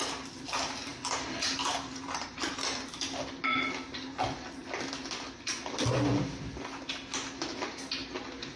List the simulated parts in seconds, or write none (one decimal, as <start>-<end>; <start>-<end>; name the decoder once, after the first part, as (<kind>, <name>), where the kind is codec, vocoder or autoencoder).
none